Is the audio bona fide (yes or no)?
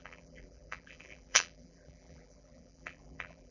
no